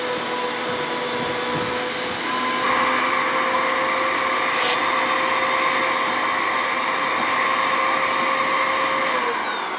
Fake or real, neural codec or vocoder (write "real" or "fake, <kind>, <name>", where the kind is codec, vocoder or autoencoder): real